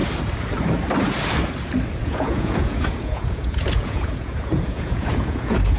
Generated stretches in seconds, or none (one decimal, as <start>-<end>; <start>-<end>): 2.0-5.8